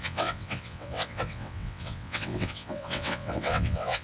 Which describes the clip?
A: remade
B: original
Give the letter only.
A